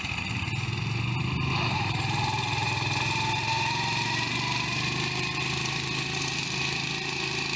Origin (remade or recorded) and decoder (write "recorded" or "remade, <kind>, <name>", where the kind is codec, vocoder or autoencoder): recorded